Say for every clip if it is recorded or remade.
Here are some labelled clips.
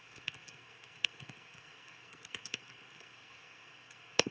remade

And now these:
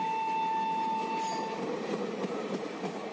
recorded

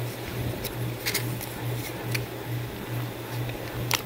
remade